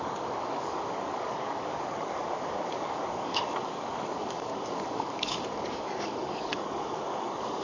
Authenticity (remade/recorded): remade